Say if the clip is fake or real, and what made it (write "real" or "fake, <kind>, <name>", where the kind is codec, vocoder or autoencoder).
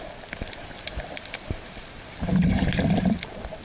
real